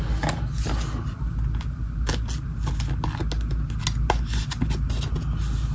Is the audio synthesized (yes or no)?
no